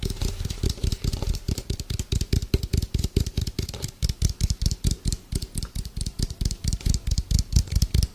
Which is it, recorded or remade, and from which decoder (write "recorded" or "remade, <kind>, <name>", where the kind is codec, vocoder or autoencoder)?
remade, vocoder, BigVGAN v2